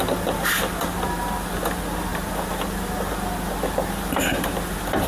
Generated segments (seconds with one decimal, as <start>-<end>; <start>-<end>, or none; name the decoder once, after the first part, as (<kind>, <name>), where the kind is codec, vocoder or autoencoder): 2.1-4.4 (vocoder, BigVGAN v2)